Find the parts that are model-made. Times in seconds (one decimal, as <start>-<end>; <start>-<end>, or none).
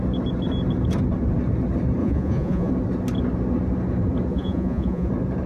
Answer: 2.0-2.7; 4.3-5.1